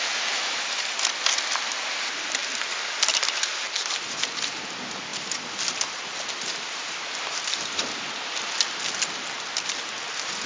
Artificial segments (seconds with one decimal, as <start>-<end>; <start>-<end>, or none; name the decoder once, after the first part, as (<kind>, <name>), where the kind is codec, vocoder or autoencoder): 5.1-10.5 (vocoder, BigVGAN v2)